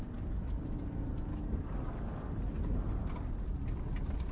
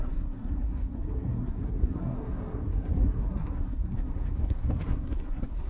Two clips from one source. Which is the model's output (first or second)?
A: second